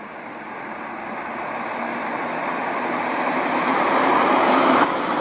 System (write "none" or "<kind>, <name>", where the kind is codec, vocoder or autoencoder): vocoder, BigVGAN v2